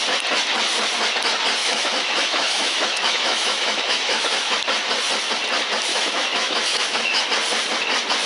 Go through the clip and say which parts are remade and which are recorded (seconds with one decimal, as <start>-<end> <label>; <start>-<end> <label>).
0.0-1.6 recorded; 1.6-4.6 remade; 4.6-5.9 recorded; 5.9-7.2 remade; 7.2-8.3 recorded